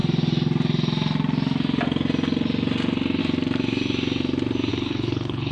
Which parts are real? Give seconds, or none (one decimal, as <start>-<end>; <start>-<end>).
0.0-4.7